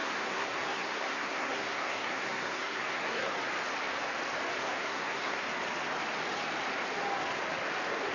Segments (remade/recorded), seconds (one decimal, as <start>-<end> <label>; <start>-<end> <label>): 0.0-3.3 remade; 3.3-4.6 recorded; 4.6-5.4 remade; 5.4-8.1 recorded

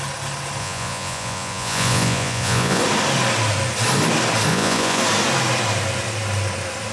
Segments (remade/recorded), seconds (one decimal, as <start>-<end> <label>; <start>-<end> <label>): 0.0-0.6 recorded; 0.6-2.8 remade; 2.8-4.5 recorded; 4.5-5.0 remade; 5.0-6.9 recorded

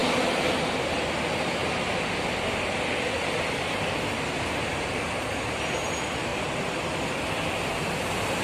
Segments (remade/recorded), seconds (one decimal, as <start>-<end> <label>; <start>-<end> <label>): 0.0-1.0 remade; 1.0-8.4 recorded

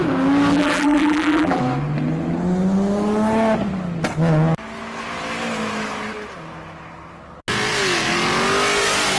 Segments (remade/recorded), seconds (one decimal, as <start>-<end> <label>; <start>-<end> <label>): 0.0-0.5 recorded; 0.5-1.6 remade; 1.6-9.2 recorded

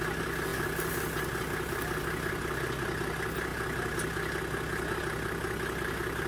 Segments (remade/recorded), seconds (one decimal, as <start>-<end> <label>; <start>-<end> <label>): 0.0-6.3 recorded